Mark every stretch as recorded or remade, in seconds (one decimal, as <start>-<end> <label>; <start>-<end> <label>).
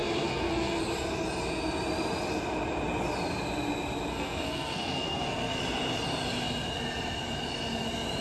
0.0-0.8 remade; 0.8-4.1 recorded; 4.1-5.6 remade; 5.6-8.2 recorded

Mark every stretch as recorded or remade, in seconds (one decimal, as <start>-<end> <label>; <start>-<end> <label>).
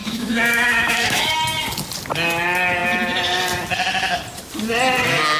0.0-1.3 remade; 1.3-5.4 recorded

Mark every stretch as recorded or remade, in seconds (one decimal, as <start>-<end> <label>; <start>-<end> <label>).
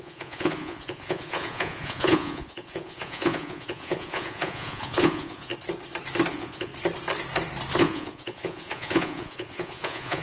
0.0-5.5 remade; 5.5-6.3 recorded; 6.3-6.7 remade; 6.7-7.8 recorded; 7.8-10.2 remade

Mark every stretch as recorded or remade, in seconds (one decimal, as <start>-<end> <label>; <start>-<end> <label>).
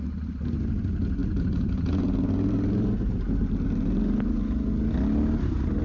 0.0-1.2 recorded; 1.2-4.7 remade; 4.7-5.8 recorded